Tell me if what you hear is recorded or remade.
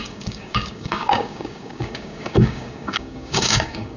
remade